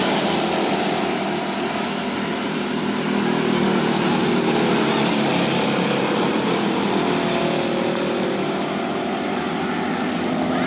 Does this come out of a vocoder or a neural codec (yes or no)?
no